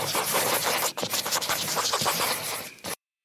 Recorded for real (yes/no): no